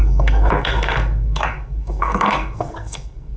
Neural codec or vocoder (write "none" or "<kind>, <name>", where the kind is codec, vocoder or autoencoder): codec, SNAC